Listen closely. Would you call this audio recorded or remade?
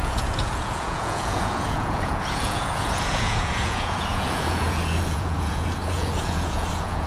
remade